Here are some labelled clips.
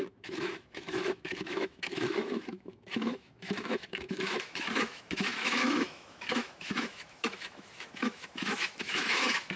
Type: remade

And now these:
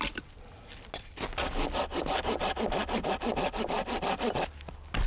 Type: recorded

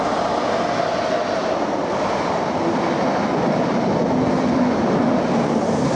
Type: recorded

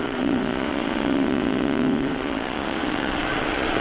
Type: remade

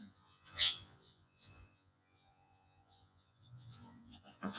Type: remade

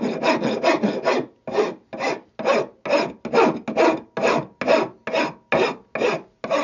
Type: recorded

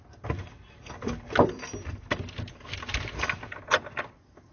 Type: recorded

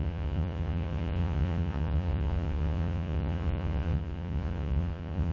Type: remade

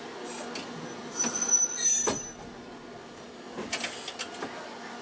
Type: recorded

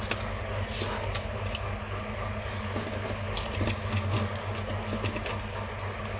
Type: recorded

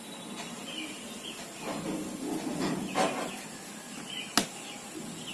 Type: recorded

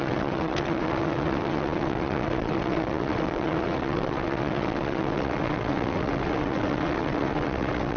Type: remade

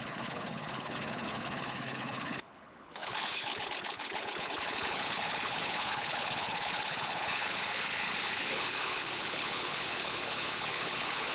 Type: remade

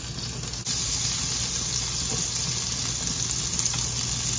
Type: recorded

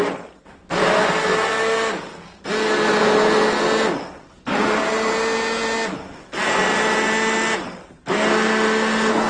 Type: recorded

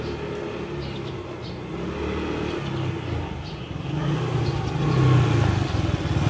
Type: recorded